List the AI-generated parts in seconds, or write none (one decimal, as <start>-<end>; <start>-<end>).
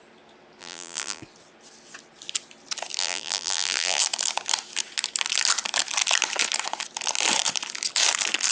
0.6-1.2; 3.0-4.0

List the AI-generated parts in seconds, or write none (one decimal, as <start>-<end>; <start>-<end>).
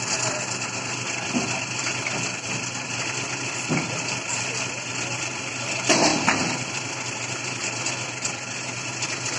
6.1-7.8